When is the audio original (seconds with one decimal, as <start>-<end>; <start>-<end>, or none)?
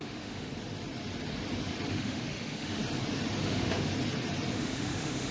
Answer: 0.5-1.9; 2.8-3.4; 3.9-4.5